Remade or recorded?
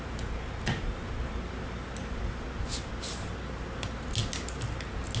recorded